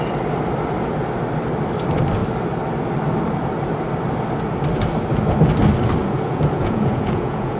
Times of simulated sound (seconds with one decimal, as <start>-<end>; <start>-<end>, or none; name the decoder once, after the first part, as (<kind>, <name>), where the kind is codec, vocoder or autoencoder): 6.0-7.6 (vocoder, Vocos)